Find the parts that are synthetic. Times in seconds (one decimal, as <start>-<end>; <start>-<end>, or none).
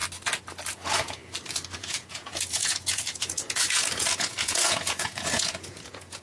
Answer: 0.7-1.2; 1.8-6.2